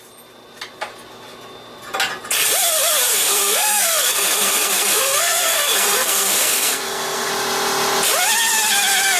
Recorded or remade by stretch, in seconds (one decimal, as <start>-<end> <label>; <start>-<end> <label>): 0.0-3.1 recorded; 3.1-7.3 remade; 7.3-9.2 recorded